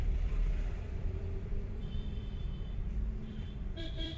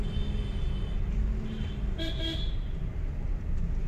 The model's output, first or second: first